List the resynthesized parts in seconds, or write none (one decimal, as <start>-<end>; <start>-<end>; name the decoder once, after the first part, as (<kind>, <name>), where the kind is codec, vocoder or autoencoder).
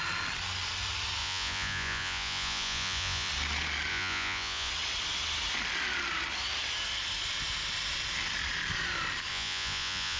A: 1.2-3.3 (vocoder, Vocos); 3.9-4.7; 9.3-10.2